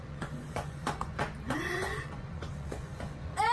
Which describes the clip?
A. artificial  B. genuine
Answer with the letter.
A